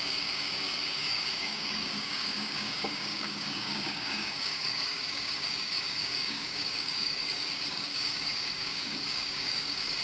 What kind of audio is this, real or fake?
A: fake